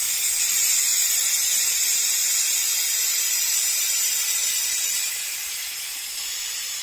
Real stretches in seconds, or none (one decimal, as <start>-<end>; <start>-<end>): 0.0-6.8